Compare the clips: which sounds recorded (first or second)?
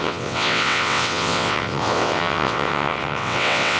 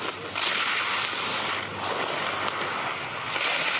second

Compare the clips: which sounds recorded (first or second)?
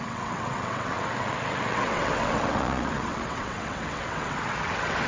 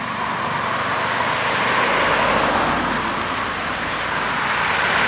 second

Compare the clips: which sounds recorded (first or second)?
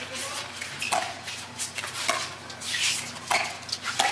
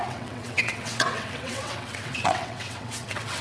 first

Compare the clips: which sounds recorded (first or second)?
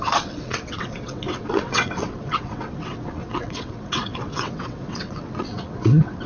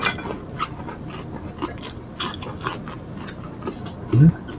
second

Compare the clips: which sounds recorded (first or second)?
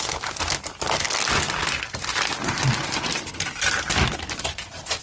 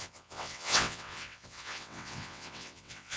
first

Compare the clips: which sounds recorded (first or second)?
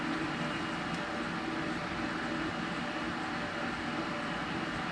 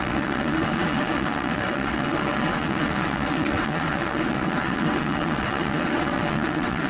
first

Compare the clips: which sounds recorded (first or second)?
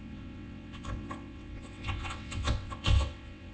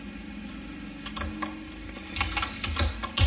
second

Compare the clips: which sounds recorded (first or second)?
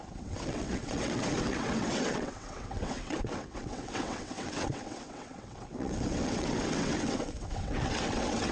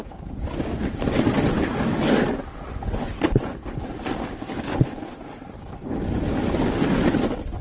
second